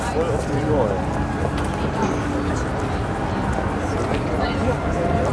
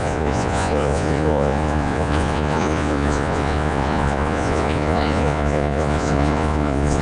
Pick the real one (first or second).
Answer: first